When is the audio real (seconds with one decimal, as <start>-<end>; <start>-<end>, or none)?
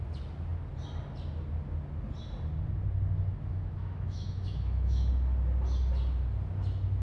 0.0-3.5; 5.1-7.0